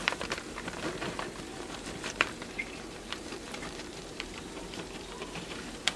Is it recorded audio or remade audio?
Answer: remade